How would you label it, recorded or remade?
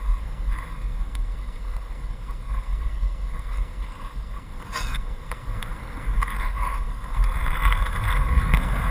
remade